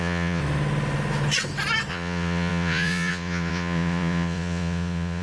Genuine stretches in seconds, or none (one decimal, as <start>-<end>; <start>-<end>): 0.4-1.9